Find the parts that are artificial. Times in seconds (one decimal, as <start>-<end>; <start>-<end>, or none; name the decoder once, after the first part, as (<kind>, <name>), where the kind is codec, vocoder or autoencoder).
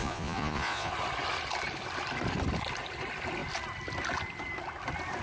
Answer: 0.0-0.9 (vocoder, Vocos)